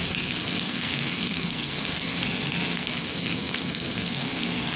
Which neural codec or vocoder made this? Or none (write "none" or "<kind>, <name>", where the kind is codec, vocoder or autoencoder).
codec, SNAC